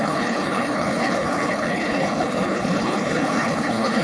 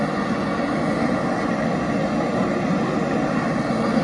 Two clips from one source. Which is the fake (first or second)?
first